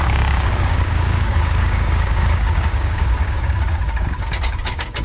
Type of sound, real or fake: fake